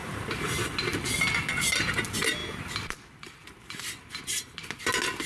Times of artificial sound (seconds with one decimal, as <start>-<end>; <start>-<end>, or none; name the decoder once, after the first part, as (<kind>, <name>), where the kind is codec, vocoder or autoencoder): 0.0-0.6 (vocoder, BigVGAN v2)